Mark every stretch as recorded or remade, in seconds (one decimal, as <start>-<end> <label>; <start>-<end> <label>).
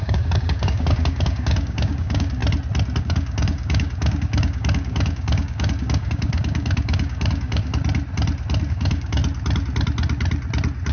0.0-2.4 remade; 2.4-3.0 recorded; 3.0-7.7 remade; 7.7-8.7 recorded; 8.7-9.2 remade; 9.2-10.9 recorded